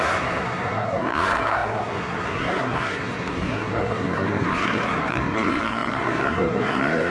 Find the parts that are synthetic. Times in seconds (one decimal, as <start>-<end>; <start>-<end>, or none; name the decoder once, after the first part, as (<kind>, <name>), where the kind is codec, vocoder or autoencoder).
0.0-7.1 (codec, SNAC)